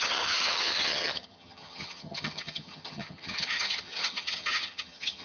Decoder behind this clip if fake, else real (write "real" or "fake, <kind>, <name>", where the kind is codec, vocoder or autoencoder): fake, vocoder, HiFi-GAN